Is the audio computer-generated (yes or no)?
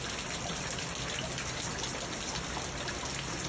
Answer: no